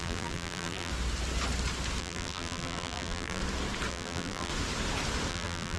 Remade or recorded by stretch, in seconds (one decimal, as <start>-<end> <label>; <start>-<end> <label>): 0.0-0.9 remade; 0.9-2.0 recorded; 2.0-3.4 remade; 3.4-3.9 recorded; 3.9-4.5 remade; 4.5-5.3 recorded; 5.3-5.8 remade